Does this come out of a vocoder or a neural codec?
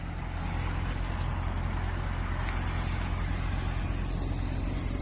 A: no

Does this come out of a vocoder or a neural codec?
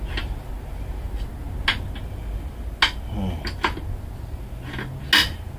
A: no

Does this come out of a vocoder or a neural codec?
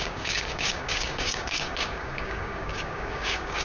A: yes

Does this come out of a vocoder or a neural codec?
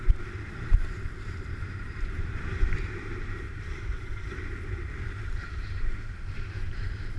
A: yes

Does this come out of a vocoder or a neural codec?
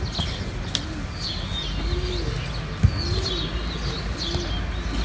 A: no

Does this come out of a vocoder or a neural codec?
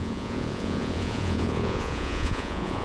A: yes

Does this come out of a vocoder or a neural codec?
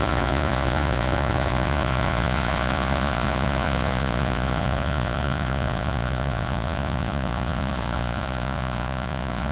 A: yes